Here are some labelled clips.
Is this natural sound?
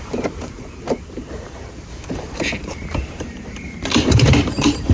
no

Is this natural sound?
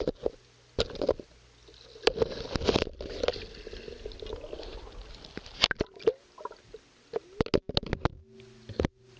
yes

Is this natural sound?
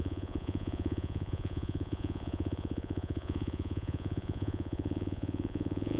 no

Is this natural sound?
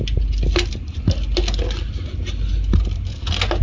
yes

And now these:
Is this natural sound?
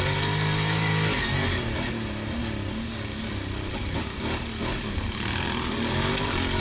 yes